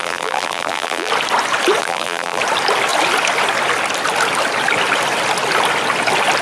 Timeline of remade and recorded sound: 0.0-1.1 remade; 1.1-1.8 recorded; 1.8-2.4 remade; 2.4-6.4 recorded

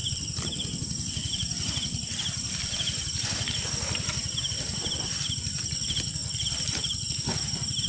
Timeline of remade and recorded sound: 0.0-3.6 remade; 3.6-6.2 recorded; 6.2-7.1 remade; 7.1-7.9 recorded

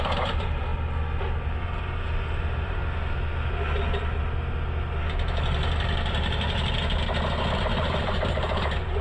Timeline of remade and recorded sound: 0.0-0.7 remade; 0.7-1.6 recorded; 1.6-2.8 remade; 2.8-7.6 recorded; 7.6-9.0 remade

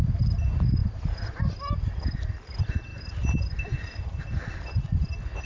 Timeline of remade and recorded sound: 0.0-0.8 recorded; 0.8-1.7 remade; 1.7-2.9 recorded; 2.9-3.4 remade; 3.4-5.4 recorded